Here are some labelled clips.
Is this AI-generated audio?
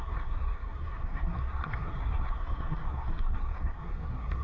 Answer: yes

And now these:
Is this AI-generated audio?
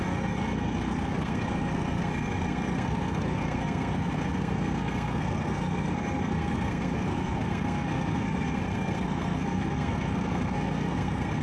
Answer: yes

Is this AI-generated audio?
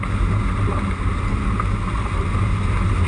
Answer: no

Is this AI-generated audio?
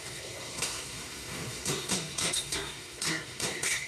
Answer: yes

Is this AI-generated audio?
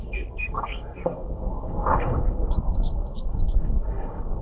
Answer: yes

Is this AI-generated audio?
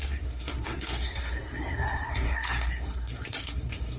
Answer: yes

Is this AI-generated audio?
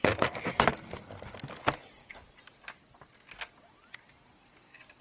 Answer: no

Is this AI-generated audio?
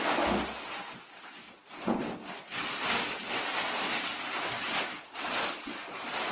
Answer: no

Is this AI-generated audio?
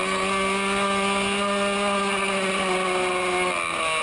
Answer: no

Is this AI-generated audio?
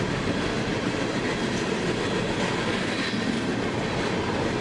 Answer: no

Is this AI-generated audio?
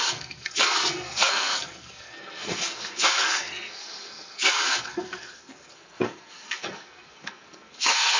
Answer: yes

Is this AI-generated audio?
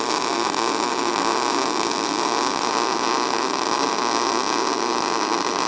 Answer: no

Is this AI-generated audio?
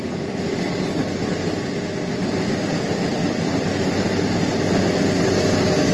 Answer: no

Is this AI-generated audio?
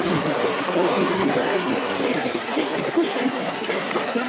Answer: yes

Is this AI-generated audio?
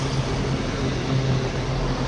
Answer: no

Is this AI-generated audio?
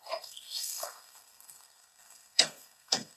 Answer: yes